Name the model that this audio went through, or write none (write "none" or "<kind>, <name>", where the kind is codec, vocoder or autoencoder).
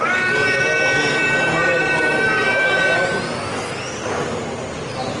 none